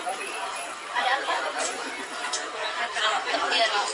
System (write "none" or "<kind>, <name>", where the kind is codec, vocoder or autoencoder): vocoder, BigVGAN v2